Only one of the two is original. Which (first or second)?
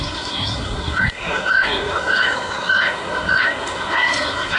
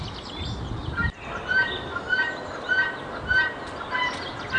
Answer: second